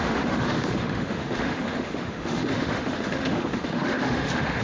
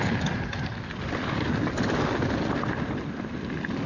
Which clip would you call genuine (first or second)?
second